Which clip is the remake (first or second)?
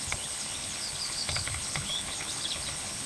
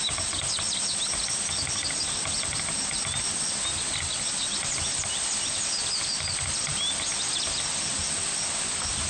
first